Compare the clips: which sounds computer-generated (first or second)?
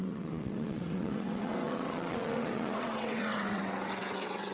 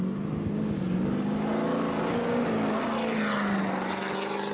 first